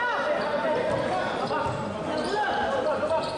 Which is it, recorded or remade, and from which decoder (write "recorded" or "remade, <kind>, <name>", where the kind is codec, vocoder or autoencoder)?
recorded